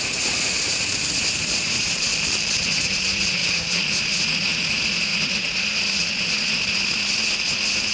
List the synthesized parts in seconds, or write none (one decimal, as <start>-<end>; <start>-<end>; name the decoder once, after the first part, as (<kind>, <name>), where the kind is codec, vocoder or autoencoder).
0.0-2.1 (vocoder, Vocos); 2.6-7.9